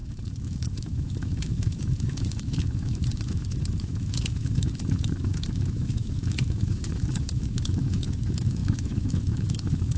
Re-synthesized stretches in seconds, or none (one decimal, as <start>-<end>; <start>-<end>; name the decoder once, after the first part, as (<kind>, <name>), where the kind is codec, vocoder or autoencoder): 0.0-10.0 (autoencoder, DAC-VAE)